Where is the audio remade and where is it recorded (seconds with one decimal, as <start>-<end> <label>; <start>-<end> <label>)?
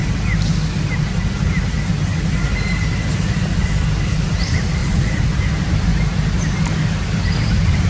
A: 0.0-3.9 recorded; 3.9-5.9 remade; 5.9-6.5 recorded; 6.5-7.9 remade